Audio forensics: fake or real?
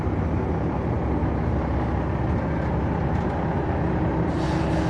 real